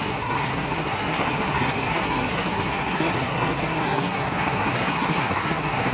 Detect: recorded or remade remade